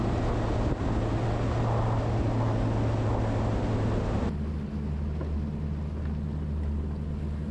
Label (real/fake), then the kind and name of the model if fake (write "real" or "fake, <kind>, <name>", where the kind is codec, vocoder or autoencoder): real